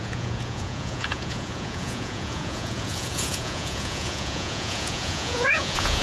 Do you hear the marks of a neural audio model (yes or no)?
yes